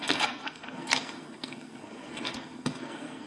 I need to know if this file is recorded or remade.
remade